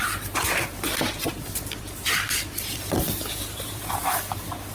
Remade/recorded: remade